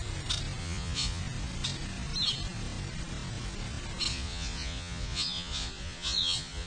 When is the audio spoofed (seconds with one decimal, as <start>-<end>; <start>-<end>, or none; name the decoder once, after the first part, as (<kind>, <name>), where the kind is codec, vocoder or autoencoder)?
0.6-1.2 (vocoder, Vocos); 4.1-6.7